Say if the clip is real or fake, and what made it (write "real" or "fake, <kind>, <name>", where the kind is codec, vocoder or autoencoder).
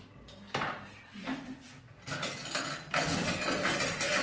real